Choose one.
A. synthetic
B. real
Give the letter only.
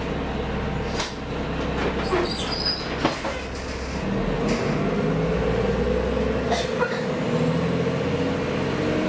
B